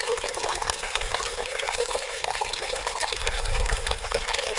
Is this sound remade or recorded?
remade